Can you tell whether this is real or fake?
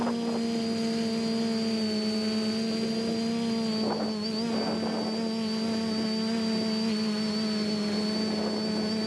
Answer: real